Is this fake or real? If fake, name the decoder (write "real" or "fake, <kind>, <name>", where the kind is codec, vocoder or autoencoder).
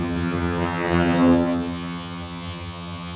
fake, vocoder, HiFi-GAN